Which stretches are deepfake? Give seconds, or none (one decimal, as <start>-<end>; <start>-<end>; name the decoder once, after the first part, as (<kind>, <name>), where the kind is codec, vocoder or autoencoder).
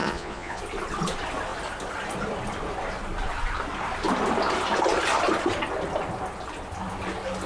0.0-0.6 (vocoder, Vocos)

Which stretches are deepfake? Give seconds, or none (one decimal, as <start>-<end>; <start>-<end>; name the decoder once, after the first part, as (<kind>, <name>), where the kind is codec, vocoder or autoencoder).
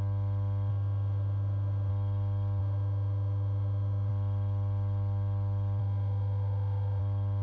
0.7-1.9 (autoencoder, DAC-VAE); 2.6-4.1; 5.8-7.0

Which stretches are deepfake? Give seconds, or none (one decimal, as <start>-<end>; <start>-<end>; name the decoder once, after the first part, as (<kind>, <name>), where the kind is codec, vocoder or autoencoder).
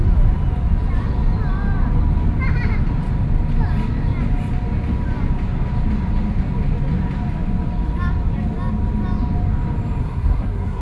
10.0-10.8 (codec, SNAC)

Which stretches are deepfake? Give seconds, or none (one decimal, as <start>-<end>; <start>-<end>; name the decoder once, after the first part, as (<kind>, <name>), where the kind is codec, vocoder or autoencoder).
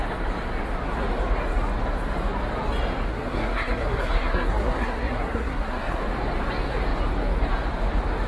3.1-6.0 (codec, SNAC)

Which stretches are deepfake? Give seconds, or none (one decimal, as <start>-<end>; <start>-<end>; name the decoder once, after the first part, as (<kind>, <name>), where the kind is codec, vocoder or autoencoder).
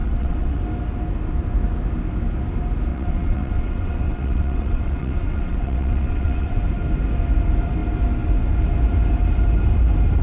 0.0-0.6 (vocoder, WaveNeXt); 2.9-6.6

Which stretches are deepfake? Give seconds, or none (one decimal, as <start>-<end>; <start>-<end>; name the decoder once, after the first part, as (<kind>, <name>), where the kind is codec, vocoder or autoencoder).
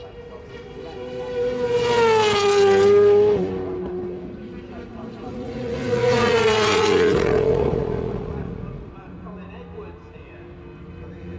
4.9-9.3 (vocoder, Vocos)